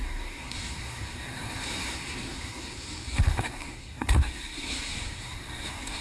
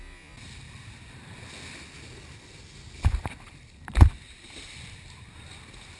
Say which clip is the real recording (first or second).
second